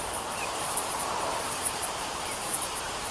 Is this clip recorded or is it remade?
remade